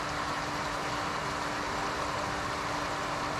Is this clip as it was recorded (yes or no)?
yes